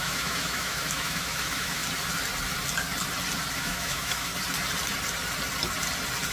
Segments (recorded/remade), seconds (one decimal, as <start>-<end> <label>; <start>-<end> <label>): 0.0-1.8 remade; 1.8-3.5 recorded; 3.5-4.3 remade; 4.3-6.3 recorded